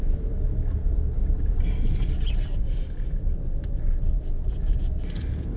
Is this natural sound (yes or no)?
yes